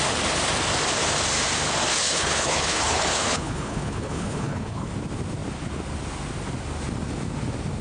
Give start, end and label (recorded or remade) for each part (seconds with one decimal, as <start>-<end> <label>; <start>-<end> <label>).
0.0-2.0 recorded; 2.0-4.9 remade; 4.9-7.8 recorded